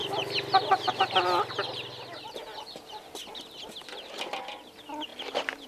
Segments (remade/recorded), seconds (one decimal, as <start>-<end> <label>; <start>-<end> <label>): 0.0-5.1 recorded; 5.1-5.7 remade